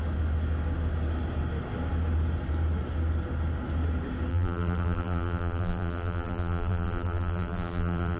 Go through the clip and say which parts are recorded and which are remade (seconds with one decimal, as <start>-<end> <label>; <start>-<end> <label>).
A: 0.0-4.3 recorded; 4.3-8.2 remade